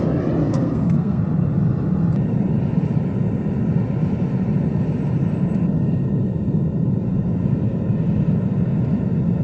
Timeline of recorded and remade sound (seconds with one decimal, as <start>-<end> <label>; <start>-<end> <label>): 0.0-0.5 recorded; 0.5-1.2 remade; 1.2-9.4 recorded